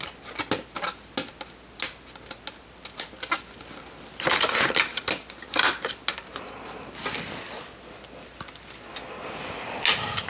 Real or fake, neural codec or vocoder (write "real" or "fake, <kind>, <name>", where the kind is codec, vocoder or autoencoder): real